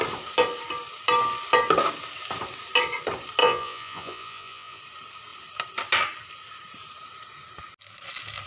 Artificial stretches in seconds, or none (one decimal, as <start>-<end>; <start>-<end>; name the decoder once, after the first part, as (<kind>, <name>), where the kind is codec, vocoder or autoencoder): 3.4-4.8 (vocoder, Vocos)